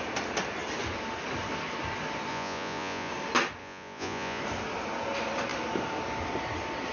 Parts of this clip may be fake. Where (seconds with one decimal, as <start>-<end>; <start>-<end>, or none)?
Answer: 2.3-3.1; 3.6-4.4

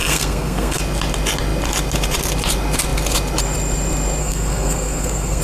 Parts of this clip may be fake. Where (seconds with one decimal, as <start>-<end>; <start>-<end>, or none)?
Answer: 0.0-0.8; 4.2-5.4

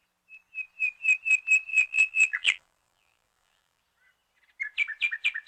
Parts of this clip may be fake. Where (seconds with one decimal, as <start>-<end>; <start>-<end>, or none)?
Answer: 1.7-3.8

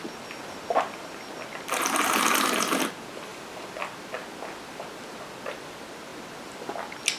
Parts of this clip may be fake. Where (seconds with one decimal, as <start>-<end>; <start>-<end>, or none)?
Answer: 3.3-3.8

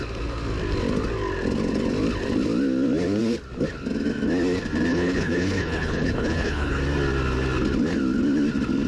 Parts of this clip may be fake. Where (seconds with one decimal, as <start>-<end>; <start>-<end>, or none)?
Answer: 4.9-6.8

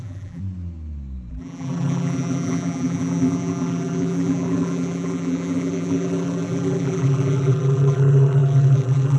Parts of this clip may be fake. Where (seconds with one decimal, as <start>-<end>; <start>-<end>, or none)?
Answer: 0.0-0.4; 1.3-9.2